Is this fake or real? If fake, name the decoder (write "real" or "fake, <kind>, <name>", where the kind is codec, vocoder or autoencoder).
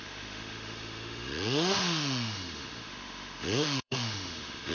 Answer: fake, autoencoder, DAC-VAE